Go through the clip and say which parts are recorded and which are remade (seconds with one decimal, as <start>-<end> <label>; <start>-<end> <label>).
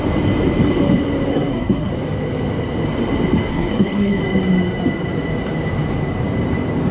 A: 0.0-1.3 recorded; 1.3-1.9 remade; 1.9-3.5 recorded; 3.5-4.2 remade; 4.2-6.9 recorded